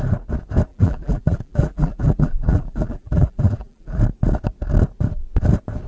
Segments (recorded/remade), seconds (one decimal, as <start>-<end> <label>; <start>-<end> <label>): 0.0-0.7 recorded; 0.7-4.0 remade; 4.0-5.9 recorded